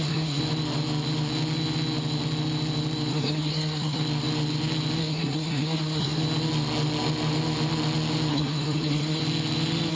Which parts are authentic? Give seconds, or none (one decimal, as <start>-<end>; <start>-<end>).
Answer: 0.4-3.1; 4.0-5.0; 6.2-8.3; 9.2-9.9